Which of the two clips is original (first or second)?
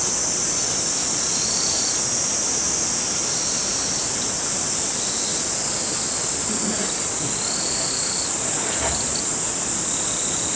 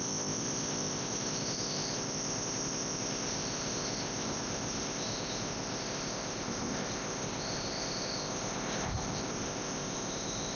first